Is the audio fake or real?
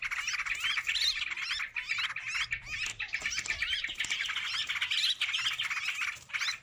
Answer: real